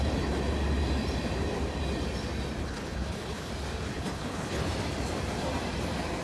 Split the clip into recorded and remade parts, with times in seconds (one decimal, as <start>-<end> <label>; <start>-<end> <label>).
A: 0.0-2.6 recorded; 2.6-3.5 remade; 3.5-3.9 recorded; 3.9-4.6 remade; 4.6-6.2 recorded